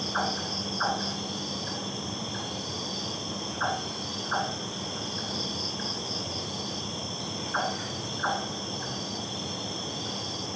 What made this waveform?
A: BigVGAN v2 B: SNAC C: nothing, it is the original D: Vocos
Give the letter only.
C